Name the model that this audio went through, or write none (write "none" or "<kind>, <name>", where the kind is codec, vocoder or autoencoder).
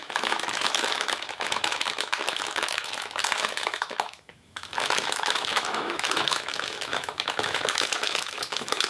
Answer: autoencoder, DAC-VAE